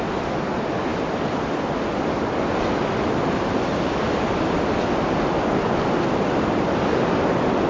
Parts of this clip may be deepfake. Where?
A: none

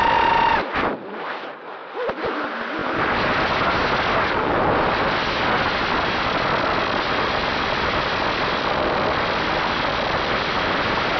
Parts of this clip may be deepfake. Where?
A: none

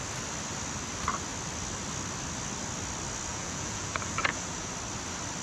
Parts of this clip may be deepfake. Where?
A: 3.3-4.7

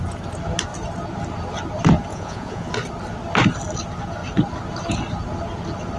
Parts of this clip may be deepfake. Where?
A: 2.1-2.7

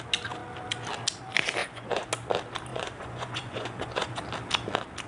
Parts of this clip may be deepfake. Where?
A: 1.6-2.1; 2.7-4.2

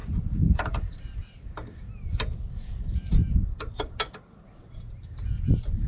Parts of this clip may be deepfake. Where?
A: none